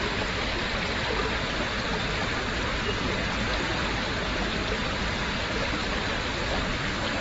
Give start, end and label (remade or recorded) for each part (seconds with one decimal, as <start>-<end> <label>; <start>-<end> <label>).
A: 0.0-7.2 recorded